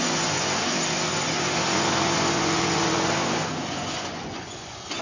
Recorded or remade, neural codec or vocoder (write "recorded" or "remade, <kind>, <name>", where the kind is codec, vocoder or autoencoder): remade, vocoder, Vocos